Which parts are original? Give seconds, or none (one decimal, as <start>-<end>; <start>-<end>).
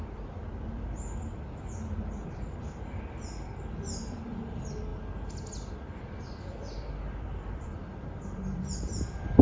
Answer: 4.9-6.2